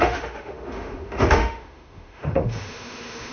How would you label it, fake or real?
fake